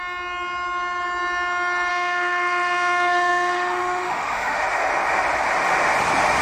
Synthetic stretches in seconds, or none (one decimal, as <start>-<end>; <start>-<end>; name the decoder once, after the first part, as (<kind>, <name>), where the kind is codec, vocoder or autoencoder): 1.9-4.6 (autoencoder, DAC-VAE)